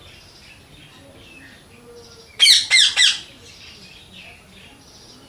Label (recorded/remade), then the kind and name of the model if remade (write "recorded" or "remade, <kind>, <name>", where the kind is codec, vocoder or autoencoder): recorded